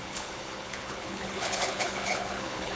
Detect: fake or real fake